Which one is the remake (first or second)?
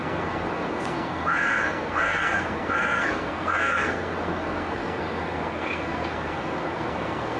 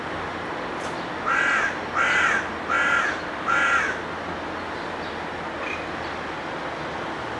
first